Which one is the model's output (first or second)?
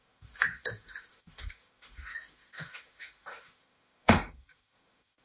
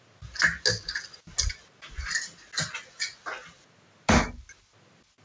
first